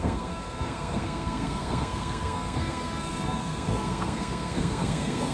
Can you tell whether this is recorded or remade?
remade